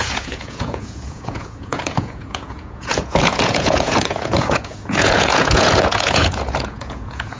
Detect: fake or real fake